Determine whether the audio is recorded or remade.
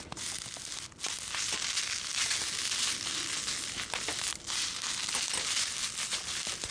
recorded